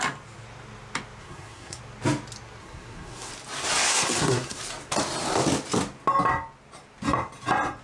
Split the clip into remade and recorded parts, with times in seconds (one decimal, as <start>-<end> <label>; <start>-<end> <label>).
0.0-1.2 recorded; 1.2-1.8 remade; 1.8-2.6 recorded; 2.6-3.3 remade; 3.3-3.9 recorded; 3.9-4.6 remade; 4.6-7.8 recorded